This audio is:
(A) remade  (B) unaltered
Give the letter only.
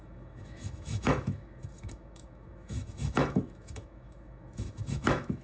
A